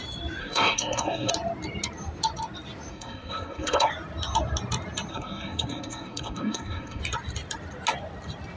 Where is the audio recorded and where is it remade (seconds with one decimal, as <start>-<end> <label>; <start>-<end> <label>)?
0.0-0.4 recorded; 0.4-1.3 remade; 1.3-2.9 recorded; 2.9-3.9 remade; 3.9-5.1 recorded; 5.1-7.0 remade; 7.0-8.6 recorded